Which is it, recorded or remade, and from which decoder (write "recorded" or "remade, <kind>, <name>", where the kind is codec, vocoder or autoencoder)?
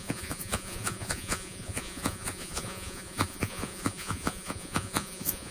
remade, vocoder, Vocos